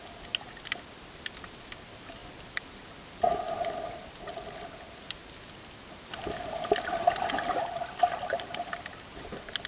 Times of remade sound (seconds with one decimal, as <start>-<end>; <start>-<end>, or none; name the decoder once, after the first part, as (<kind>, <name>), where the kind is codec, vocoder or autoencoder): none